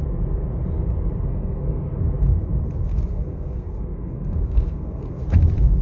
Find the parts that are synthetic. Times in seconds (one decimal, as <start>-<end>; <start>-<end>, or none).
1.3-1.9; 2.9-5.2